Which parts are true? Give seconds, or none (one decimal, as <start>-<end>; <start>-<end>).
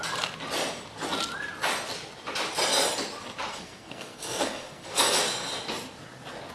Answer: 0.0-3.5; 5.2-6.5